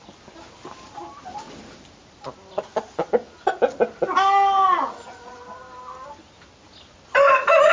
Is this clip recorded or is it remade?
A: recorded